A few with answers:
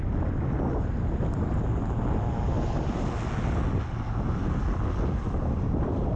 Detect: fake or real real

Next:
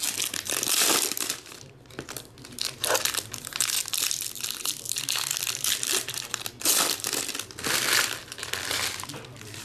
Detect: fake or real fake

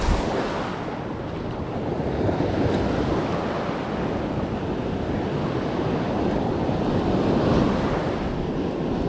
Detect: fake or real real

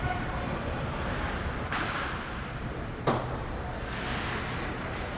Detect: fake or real fake